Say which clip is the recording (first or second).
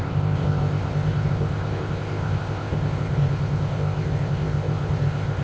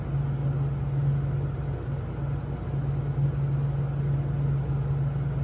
second